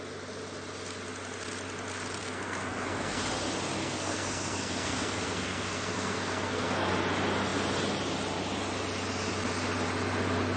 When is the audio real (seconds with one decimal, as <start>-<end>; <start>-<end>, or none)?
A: 0.0-2.2; 3.2-3.8; 6.9-10.6